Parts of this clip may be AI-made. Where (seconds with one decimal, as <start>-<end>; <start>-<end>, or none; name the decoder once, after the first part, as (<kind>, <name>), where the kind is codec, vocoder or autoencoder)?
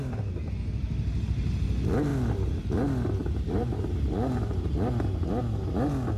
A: 3.2-4.7 (vocoder, BigVGAN v2)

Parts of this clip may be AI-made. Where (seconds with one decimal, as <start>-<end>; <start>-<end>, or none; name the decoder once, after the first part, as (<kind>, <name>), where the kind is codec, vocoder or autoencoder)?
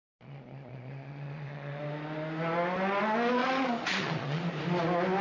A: 0.0-1.8 (vocoder, Vocos); 3.4-4.4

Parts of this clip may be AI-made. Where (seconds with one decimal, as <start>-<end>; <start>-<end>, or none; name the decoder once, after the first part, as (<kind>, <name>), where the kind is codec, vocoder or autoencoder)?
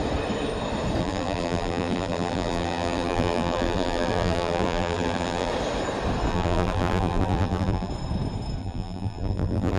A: 1.0-5.5 (vocoder, BigVGAN v2); 6.3-7.9; 8.6-9.8